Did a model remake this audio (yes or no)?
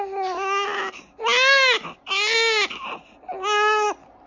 no